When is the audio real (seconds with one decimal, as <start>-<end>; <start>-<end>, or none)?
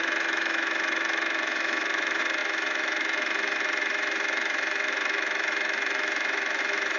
none